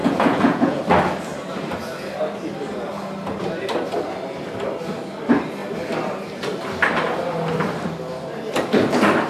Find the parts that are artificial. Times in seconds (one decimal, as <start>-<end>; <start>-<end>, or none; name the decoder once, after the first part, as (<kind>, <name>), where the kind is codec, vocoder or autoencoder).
0.0-0.8 (vocoder, Vocos)